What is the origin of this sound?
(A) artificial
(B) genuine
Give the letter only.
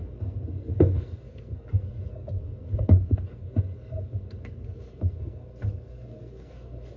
A